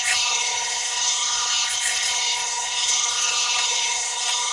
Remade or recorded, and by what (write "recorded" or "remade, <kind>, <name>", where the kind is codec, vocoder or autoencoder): remade, codec, HILCodec